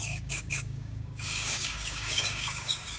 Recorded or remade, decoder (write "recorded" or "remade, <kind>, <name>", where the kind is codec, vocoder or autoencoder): remade, codec, DAC